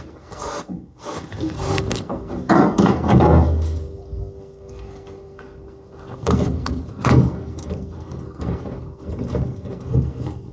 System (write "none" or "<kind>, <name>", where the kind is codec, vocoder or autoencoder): codec, SNAC